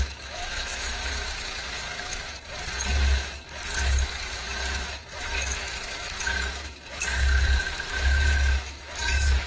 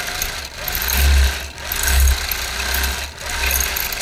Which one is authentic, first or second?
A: second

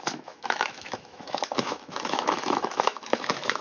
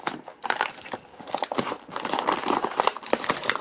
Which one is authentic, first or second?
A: second